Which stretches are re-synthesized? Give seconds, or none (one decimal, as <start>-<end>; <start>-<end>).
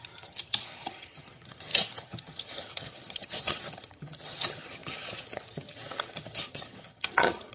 0.0-7.5